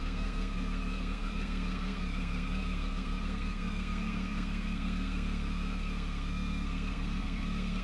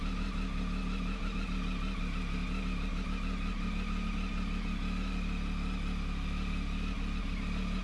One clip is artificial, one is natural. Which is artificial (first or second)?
first